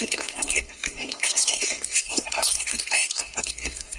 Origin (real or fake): fake